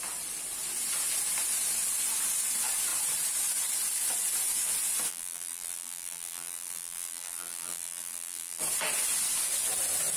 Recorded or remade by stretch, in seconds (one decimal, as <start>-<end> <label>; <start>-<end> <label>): 0.0-5.1 recorded; 5.1-8.6 remade; 8.6-10.2 recorded

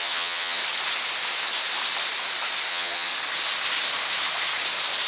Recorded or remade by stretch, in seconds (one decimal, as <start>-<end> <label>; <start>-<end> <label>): 0.0-0.6 remade; 0.6-2.7 recorded; 2.7-3.1 remade; 3.1-5.1 recorded

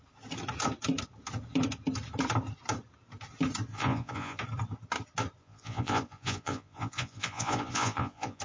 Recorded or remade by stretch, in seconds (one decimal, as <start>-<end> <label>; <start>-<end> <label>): 0.0-3.7 recorded; 3.7-4.4 remade; 4.4-5.4 recorded; 5.4-8.4 remade

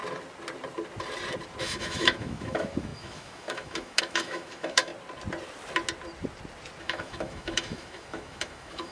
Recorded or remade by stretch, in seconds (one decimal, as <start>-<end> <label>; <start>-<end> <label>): 0.0-1.6 recorded; 1.6-4.9 remade; 4.9-6.8 recorded; 6.8-8.9 remade

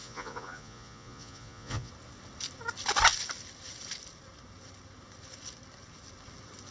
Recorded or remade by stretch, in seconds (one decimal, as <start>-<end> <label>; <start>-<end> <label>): 0.0-1.9 remade; 1.9-6.7 recorded

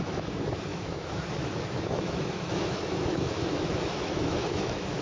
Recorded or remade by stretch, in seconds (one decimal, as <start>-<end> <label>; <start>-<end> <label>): 0.0-5.0 remade

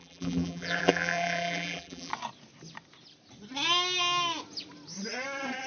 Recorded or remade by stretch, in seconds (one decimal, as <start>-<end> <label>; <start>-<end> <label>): 0.0-2.1 remade; 2.1-5.7 recorded